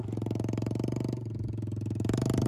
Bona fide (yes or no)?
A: yes